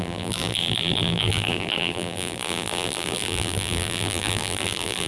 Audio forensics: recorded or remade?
remade